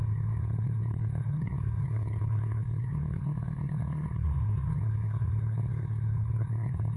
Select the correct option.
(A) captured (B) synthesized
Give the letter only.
B